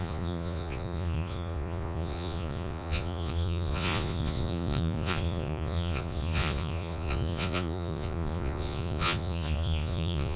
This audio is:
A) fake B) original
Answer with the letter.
A